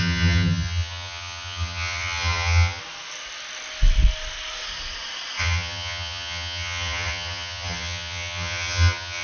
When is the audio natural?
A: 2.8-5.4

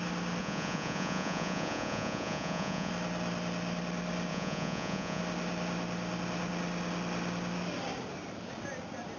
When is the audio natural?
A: 0.0-0.4; 2.9-4.3; 5.2-9.2

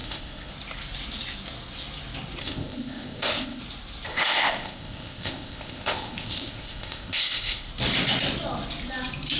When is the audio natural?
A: 0.5-2.4; 3.6-4.1; 7.7-9.4

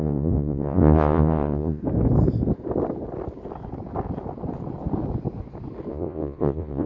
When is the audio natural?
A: 1.8-5.9

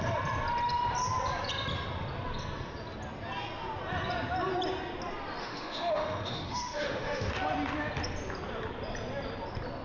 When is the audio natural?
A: 0.0-5.4; 7.3-9.8

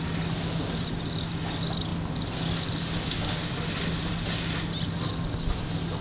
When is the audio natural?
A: 0.0-6.0

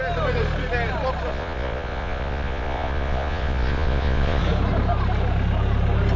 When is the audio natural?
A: 0.0-1.3; 4.4-6.2